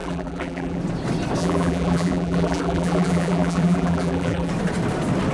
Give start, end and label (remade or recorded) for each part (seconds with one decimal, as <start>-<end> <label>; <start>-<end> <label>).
0.0-0.8 remade; 0.8-1.4 recorded; 1.4-4.5 remade; 4.5-5.3 recorded